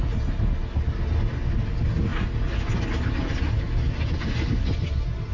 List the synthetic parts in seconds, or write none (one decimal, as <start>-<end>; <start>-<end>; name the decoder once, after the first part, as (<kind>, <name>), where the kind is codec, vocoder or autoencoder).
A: none